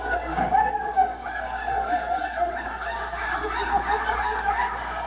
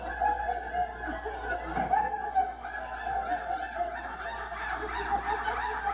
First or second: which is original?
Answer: second